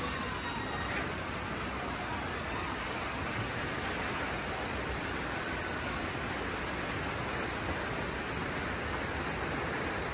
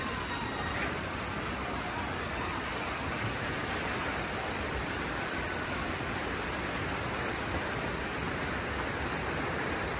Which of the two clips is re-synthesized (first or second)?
second